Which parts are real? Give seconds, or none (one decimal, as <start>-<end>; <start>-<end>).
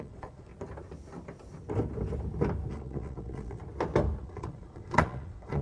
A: 0.5-2.7; 3.6-4.2